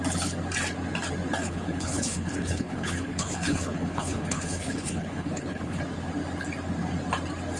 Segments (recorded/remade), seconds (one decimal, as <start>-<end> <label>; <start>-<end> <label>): 0.0-1.4 recorded; 1.4-5.8 remade; 5.8-7.6 recorded